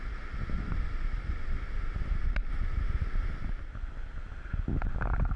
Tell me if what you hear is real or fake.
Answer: real